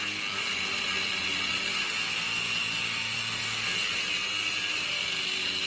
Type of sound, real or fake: real